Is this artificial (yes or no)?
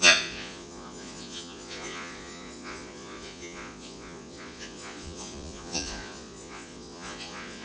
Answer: yes